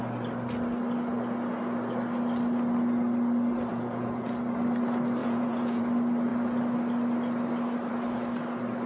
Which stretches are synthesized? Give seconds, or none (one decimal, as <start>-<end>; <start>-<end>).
3.7-4.3; 5.2-5.8